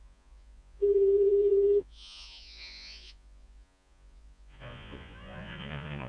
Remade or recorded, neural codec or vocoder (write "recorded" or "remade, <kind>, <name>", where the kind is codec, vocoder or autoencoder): remade, vocoder, Vocos